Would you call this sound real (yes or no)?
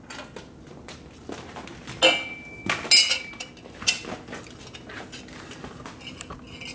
yes